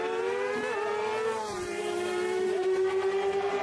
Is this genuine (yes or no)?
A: no